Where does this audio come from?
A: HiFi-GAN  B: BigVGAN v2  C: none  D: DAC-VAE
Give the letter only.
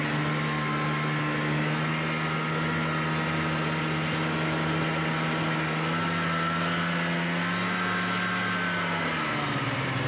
C